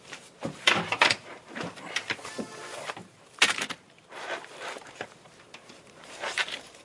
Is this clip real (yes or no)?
no